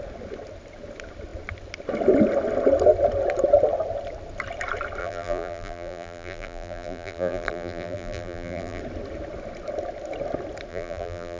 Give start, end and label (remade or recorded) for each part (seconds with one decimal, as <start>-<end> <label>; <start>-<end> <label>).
0.0-5.0 recorded; 5.0-8.8 remade; 8.8-10.7 recorded; 10.7-11.4 remade

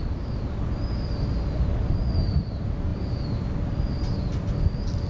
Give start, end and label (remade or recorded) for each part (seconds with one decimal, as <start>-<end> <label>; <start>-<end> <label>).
0.0-2.9 recorded; 2.9-3.9 remade; 3.9-5.1 recorded

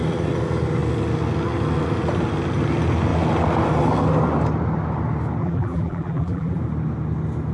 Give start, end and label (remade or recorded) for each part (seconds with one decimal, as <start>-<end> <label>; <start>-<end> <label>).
0.0-5.4 recorded; 5.4-6.6 remade; 6.6-7.5 recorded

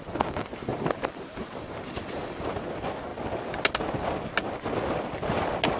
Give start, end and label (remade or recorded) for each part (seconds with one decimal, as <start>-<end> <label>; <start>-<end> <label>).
0.0-0.7 recorded; 0.7-2.7 remade; 2.7-5.8 recorded

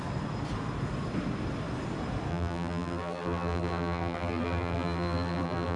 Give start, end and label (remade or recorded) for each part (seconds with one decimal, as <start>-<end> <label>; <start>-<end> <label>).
0.0-2.3 recorded; 2.3-5.8 remade